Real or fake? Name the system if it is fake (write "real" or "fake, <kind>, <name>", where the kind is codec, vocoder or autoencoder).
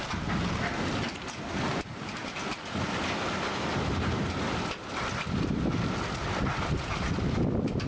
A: real